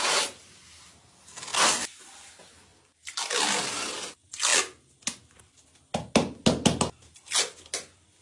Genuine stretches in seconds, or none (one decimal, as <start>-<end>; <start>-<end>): 0.0-1.5; 2.3-2.7; 3.9-8.2